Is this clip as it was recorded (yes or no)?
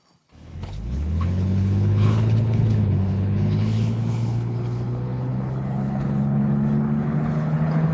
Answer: no